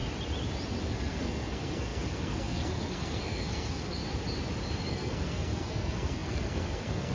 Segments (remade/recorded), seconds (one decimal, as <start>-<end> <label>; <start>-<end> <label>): 0.0-0.8 recorded; 0.8-4.0 remade; 4.0-4.9 recorded; 4.9-7.1 remade